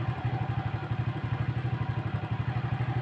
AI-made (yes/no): no